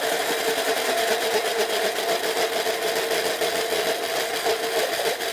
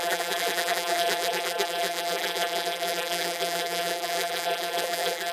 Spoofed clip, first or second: second